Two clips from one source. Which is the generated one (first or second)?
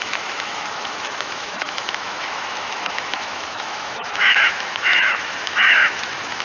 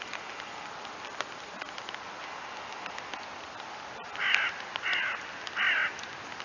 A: first